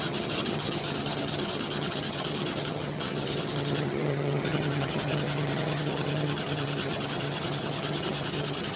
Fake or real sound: fake